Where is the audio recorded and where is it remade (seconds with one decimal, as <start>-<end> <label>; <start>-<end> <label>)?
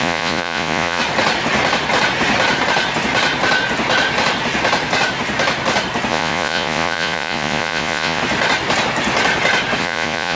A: 0.0-1.0 remade; 1.0-6.1 recorded; 6.1-8.2 remade; 8.2-9.8 recorded; 9.8-10.4 remade